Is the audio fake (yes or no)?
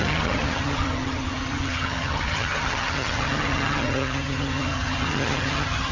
yes